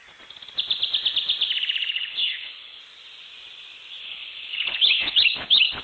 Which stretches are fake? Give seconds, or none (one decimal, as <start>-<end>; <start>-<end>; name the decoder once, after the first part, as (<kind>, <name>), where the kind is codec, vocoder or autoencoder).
1.9-2.8 (codec, HILCodec); 4.0-5.8